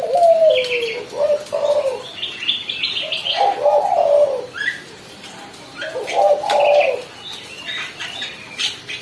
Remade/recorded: recorded